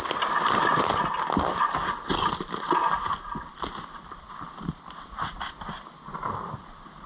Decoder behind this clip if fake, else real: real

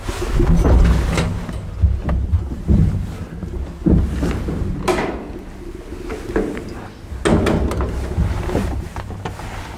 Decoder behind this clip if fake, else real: real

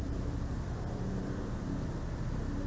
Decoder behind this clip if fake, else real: fake, vocoder, BigVGAN v2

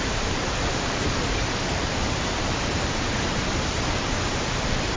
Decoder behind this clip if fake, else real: fake, vocoder, BigVGAN v2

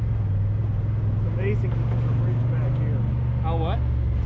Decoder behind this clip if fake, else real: real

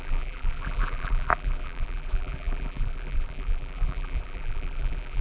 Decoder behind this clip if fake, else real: fake, vocoder, BigVGAN v2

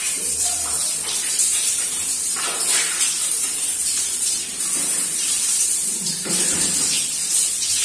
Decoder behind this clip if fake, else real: fake, vocoder, BigVGAN v2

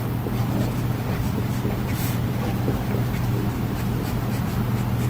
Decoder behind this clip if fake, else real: fake, vocoder, BigVGAN v2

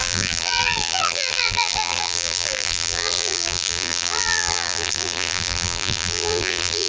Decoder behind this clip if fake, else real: fake, vocoder, BigVGAN v2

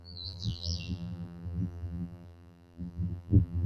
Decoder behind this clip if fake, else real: fake, vocoder, BigVGAN v2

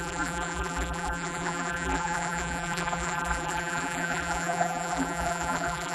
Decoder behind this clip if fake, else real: fake, vocoder, BigVGAN v2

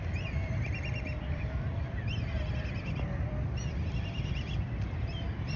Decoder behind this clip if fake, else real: fake, vocoder, BigVGAN v2